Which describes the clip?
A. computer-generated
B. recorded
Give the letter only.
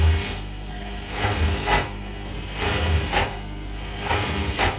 A